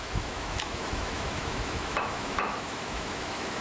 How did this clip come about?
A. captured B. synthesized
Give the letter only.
B